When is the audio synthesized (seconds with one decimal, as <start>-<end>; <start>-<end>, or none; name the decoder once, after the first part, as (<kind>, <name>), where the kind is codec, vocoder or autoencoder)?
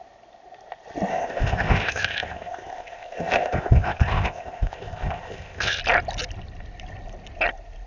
1.1-5.8 (codec, ZipCodec)